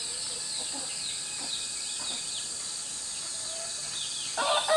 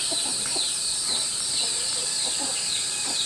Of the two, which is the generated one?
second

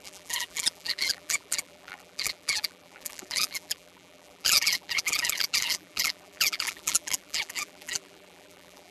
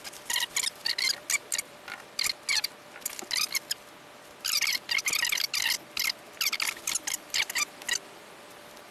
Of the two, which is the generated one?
first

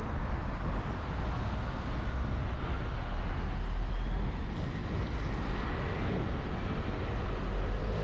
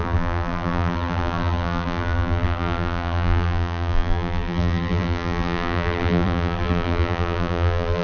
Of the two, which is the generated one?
second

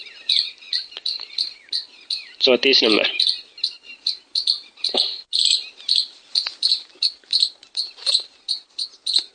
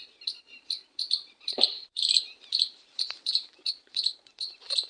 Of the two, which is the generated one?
second